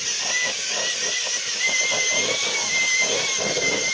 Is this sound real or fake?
real